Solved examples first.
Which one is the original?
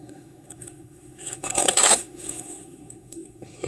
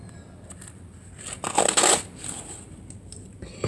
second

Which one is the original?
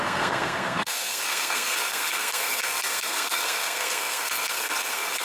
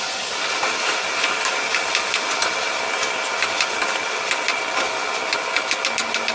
second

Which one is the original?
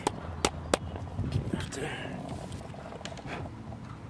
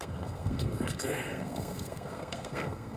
first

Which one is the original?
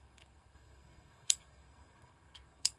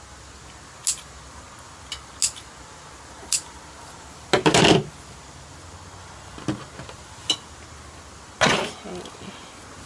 second